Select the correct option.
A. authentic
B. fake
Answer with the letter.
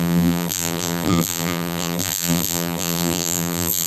B